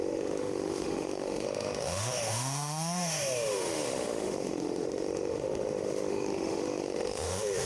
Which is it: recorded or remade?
remade